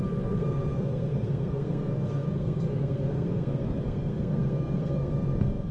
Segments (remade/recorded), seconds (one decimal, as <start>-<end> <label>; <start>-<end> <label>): 0.0-5.7 remade